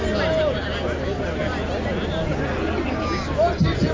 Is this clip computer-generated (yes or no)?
no